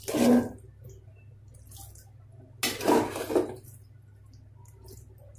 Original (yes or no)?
yes